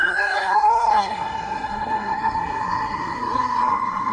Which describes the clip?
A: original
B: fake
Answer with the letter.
B